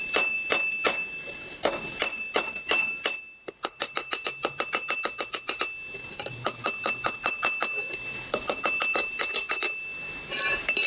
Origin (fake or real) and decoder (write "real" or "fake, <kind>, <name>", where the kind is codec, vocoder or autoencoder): real